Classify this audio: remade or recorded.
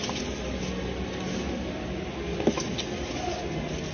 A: recorded